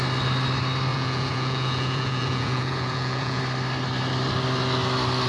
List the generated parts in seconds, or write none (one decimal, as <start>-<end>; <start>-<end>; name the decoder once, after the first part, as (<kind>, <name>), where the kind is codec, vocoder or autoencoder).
0.9-3.4 (vocoder, Vocos)